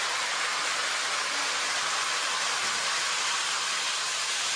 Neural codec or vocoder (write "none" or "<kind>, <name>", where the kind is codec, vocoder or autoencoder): none